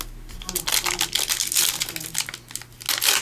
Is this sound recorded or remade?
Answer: recorded